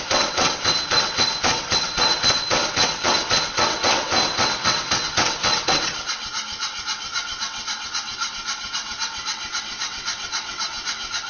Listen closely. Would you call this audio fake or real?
fake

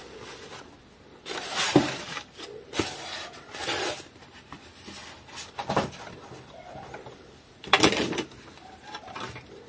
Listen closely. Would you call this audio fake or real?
fake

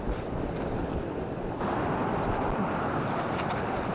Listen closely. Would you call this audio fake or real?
real